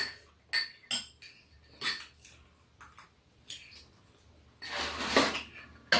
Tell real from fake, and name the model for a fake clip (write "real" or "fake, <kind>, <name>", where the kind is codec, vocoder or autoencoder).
real